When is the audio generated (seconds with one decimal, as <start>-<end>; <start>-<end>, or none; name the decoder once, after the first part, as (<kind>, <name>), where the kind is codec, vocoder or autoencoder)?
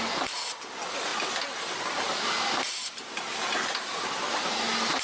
none